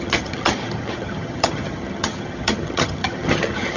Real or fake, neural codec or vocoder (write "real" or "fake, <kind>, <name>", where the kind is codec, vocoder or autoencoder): fake, vocoder, HiFi-GAN